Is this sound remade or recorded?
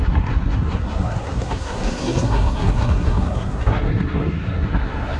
remade